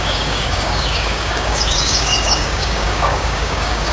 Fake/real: fake